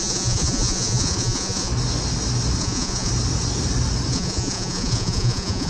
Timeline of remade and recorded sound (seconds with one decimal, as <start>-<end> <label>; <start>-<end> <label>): 0.0-1.7 remade; 1.7-2.6 recorded; 2.6-3.1 remade; 3.1-4.1 recorded; 4.1-5.7 remade